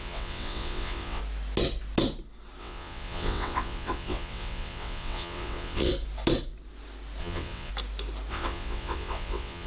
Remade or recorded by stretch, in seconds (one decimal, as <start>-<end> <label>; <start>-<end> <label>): 0.0-1.2 remade; 1.2-2.6 recorded; 2.6-5.9 remade; 5.9-7.2 recorded; 7.2-7.7 remade; 7.7-8.3 recorded; 8.3-9.7 remade